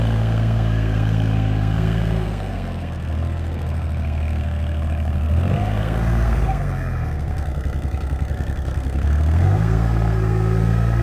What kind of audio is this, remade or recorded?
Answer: remade